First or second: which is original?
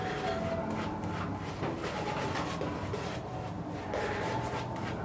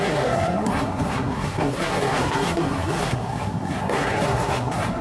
first